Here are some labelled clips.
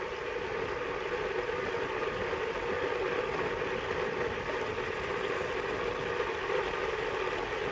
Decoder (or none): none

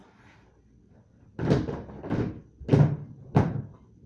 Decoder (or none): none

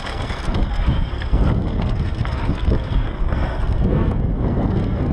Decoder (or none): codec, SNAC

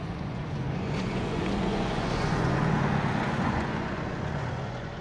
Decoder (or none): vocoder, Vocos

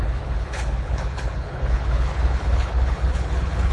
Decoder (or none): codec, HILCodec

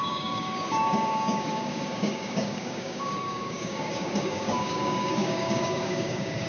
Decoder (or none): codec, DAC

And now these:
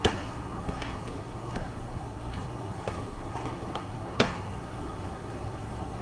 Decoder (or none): codec, SNAC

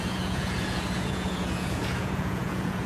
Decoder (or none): vocoder, Vocos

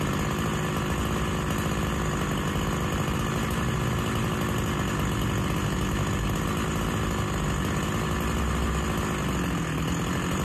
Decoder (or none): none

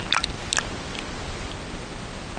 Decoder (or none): none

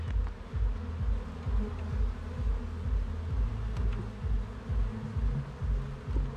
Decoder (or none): none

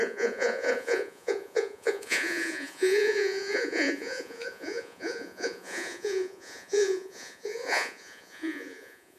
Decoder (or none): vocoder, Vocos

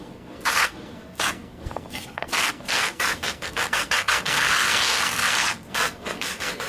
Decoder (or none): codec, SNAC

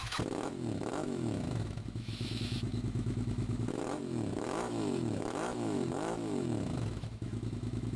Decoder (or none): autoencoder, DAC-VAE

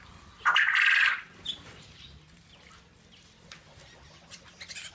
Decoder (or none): none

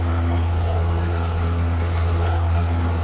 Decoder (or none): codec, SNAC